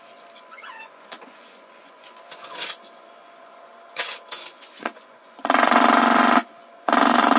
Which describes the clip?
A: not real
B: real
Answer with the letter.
A